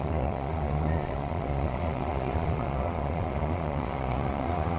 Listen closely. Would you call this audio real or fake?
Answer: fake